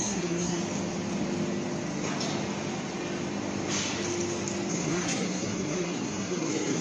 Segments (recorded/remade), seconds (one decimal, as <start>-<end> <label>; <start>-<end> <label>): 0.0-0.6 remade; 0.6-4.7 recorded; 4.7-6.8 remade